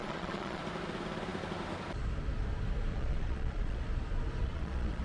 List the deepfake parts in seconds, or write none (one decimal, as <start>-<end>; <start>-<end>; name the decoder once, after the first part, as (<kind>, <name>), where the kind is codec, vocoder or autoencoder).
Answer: 0.0-0.6 (vocoder, Vocos); 2.9-3.8; 4.4-5.0

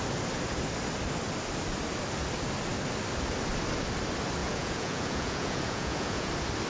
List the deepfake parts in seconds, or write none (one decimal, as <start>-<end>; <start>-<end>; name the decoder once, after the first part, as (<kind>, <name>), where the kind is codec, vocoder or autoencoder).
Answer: 4.4-6.3 (vocoder, Vocos)

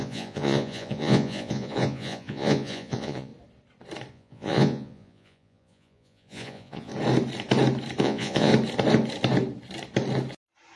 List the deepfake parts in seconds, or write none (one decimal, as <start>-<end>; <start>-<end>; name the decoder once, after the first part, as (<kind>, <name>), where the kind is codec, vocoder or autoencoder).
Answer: 0.0-3.3 (vocoder, Vocos); 4.1-6.9; 8.0-8.5

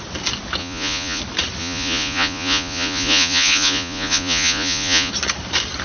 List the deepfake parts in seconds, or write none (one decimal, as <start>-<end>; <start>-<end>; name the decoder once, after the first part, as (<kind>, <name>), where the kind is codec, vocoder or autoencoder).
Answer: 0.6-1.2 (vocoder, Vocos); 1.6-5.1

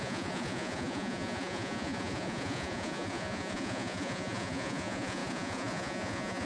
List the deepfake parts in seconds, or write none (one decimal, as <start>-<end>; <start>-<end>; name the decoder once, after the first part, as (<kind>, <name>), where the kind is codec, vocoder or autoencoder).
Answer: 0.0-6.5 (vocoder, Vocos)

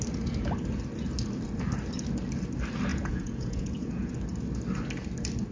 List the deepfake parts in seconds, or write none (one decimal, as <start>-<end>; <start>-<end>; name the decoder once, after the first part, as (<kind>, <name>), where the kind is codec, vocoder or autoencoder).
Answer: 2.9-4.1 (vocoder, Vocos)